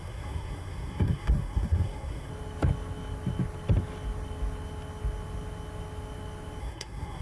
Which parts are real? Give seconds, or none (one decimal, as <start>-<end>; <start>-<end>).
2.3-6.6